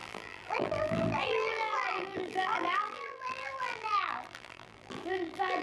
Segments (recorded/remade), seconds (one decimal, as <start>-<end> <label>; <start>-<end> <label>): 0.0-5.6 remade

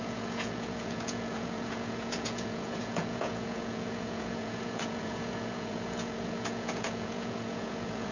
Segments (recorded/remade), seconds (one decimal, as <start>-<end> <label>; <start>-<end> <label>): 0.0-8.1 remade

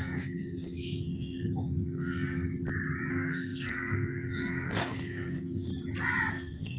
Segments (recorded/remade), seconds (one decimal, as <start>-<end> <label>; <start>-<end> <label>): 0.0-2.5 remade; 2.5-3.1 recorded; 3.1-5.7 remade; 5.7-6.3 recorded; 6.3-6.8 remade

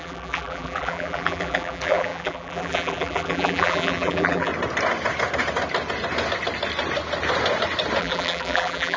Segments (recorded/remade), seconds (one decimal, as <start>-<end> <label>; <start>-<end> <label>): 0.0-4.5 remade; 4.5-8.0 recorded; 8.0-9.0 remade

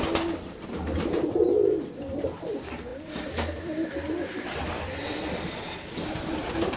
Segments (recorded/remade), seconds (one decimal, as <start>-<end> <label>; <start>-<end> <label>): 0.0-6.8 recorded

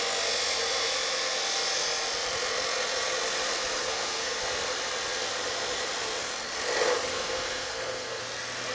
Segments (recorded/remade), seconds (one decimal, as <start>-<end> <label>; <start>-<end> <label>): 0.0-3.8 recorded; 3.8-4.4 remade; 4.4-7.1 recorded; 7.1-8.2 remade; 8.2-8.7 recorded

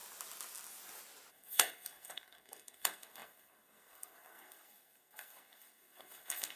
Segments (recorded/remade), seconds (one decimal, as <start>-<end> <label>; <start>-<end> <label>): 0.0-1.3 recorded; 1.3-6.6 remade